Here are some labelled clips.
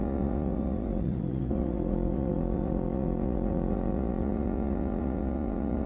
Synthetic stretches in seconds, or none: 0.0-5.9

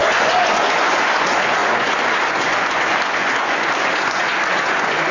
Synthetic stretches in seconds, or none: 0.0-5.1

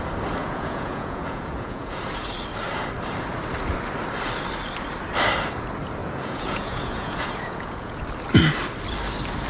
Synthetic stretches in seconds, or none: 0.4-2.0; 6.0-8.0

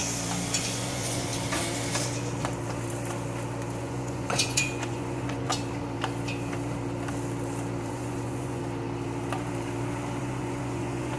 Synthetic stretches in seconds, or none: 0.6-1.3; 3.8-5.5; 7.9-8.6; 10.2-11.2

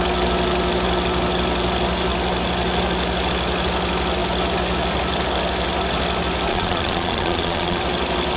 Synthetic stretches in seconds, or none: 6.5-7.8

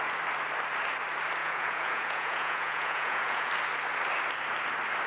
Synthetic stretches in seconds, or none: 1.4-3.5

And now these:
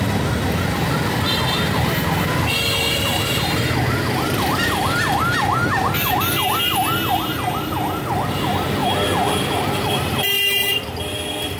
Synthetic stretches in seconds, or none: none

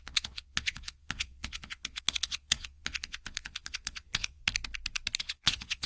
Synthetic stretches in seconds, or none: 0.0-4.4; 5.2-5.9